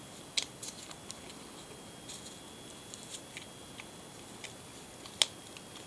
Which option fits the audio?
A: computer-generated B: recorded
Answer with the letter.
B